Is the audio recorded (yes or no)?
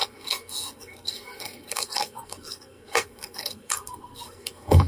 no